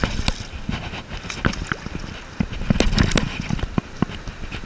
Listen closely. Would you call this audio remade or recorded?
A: recorded